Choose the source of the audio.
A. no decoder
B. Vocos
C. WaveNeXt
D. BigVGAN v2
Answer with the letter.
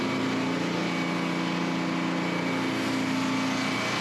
A